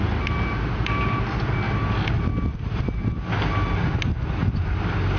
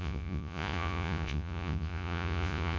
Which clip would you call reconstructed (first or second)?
second